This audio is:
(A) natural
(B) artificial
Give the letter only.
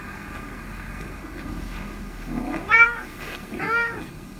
B